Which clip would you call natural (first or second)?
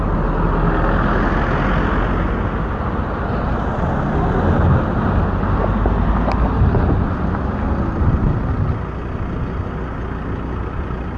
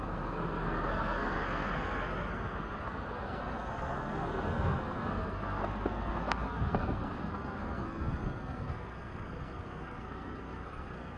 first